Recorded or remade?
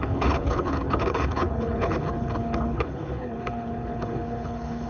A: remade